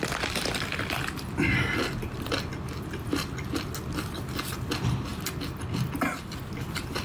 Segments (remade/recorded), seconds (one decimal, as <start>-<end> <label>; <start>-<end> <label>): 0.0-7.0 recorded